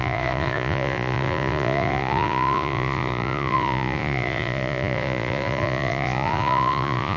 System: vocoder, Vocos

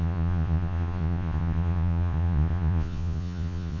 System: vocoder, Vocos